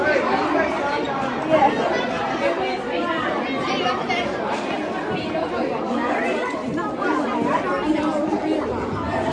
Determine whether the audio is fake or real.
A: real